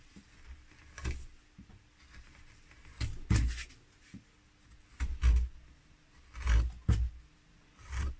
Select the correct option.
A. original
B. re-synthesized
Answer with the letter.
A